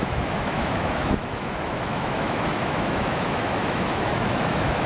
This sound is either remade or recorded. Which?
remade